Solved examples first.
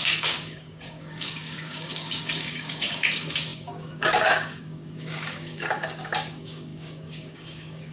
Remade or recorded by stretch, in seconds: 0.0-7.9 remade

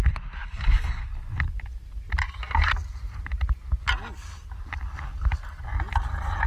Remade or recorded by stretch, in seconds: 0.0-0.4 recorded; 0.4-1.1 remade; 1.1-6.5 recorded

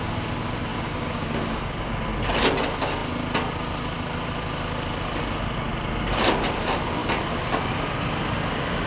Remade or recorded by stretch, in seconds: 0.0-0.7 recorded; 0.7-1.9 remade; 1.9-8.9 recorded